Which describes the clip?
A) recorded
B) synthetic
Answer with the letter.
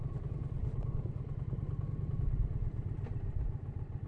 A